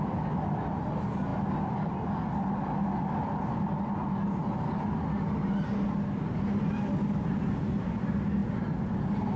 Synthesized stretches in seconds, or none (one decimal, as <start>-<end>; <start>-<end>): none

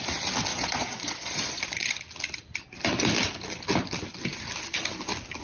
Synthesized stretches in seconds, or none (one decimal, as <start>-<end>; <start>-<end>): 0.5-1.9